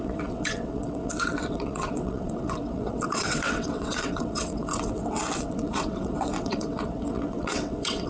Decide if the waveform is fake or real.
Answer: fake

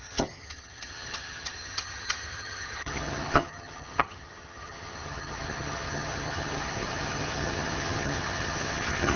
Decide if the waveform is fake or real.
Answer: fake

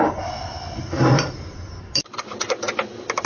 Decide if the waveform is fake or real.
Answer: real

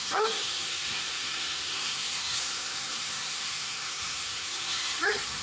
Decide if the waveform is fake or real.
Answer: fake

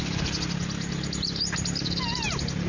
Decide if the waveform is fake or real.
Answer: real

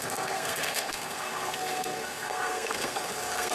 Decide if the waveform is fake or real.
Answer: fake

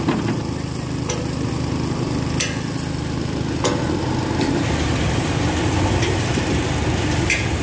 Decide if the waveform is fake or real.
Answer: real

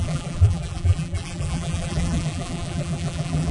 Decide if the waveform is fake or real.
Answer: fake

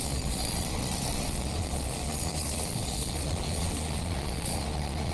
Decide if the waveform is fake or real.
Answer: fake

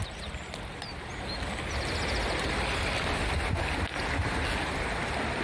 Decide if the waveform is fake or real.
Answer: real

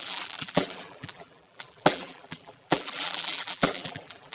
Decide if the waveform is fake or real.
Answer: fake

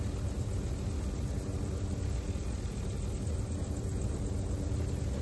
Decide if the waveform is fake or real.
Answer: real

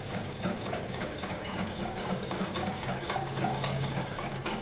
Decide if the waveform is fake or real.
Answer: fake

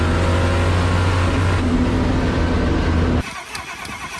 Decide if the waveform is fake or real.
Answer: real